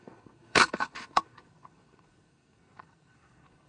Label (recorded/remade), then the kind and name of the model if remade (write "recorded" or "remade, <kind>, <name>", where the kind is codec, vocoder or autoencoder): remade, codec, SNAC